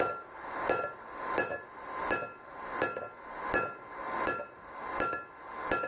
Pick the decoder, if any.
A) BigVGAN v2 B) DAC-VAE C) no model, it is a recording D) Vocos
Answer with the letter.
C